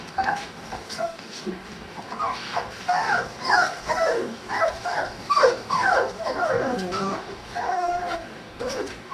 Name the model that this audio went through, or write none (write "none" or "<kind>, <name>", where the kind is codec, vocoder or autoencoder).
codec, DAC